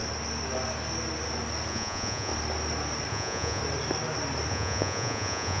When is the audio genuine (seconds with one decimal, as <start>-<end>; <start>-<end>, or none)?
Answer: 0.0-1.7; 2.3-3.1; 3.6-4.5